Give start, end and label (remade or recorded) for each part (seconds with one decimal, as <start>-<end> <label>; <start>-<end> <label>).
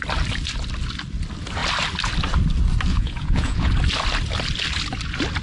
0.0-2.9 recorded; 2.9-3.7 remade; 3.7-5.4 recorded